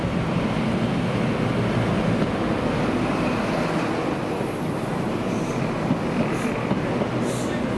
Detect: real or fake real